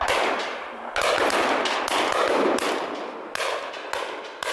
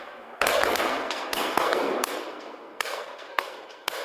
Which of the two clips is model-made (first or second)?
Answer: second